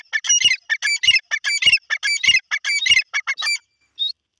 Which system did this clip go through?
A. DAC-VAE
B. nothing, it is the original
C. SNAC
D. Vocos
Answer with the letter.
B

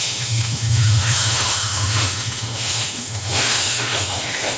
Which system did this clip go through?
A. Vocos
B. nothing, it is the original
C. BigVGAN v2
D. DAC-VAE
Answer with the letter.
D